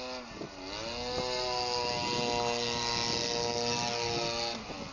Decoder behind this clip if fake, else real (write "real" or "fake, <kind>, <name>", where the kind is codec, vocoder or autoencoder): real